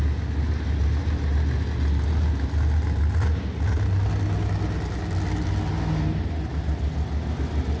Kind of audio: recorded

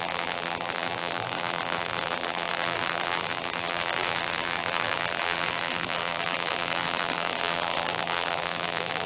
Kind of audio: remade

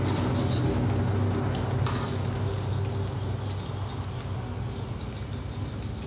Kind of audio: recorded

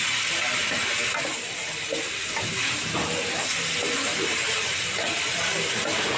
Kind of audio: recorded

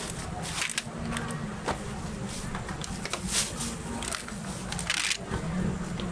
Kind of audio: recorded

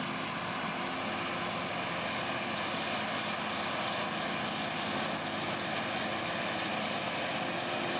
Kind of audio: recorded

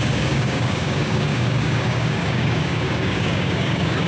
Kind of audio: remade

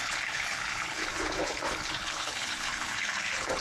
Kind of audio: remade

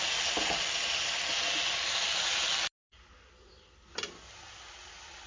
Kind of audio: recorded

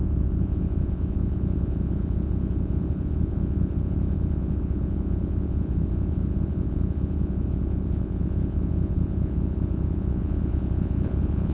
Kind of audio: remade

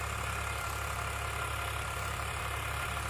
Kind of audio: remade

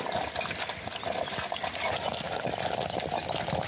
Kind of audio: recorded